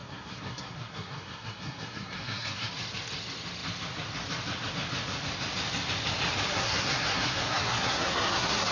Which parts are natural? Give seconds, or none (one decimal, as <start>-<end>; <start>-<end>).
2.7-6.5